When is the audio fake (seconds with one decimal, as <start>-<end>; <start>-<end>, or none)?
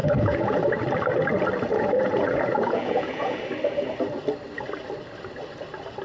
0.0-0.6; 1.7-3.4